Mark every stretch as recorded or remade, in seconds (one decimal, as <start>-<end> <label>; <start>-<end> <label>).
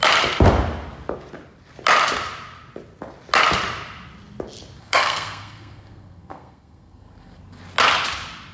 0.0-4.8 recorded; 4.8-7.4 remade; 7.4-8.5 recorded